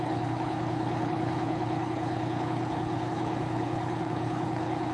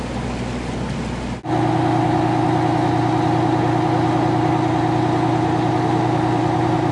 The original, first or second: second